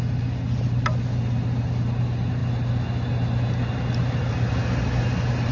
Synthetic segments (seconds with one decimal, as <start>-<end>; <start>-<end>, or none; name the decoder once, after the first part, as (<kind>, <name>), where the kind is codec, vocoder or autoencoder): none